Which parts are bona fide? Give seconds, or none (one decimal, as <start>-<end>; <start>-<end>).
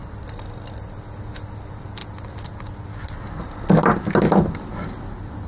0.0-5.5